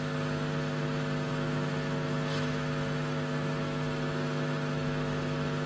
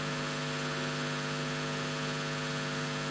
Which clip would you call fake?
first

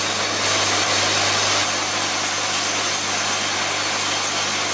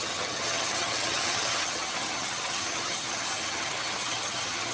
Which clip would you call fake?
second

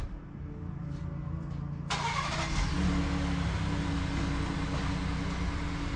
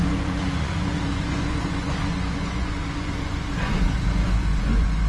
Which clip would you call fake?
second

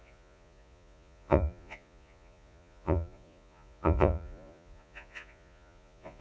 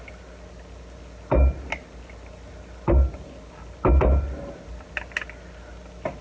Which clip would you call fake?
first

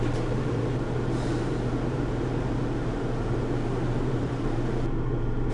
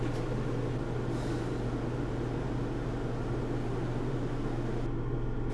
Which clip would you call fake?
first